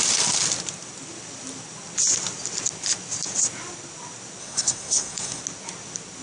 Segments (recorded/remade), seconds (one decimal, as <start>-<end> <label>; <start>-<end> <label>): 0.0-4.4 recorded; 4.4-5.4 remade; 5.4-6.2 recorded